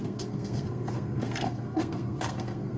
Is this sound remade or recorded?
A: remade